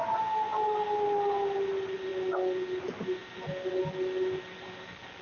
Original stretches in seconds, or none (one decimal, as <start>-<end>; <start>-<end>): 0.0-5.2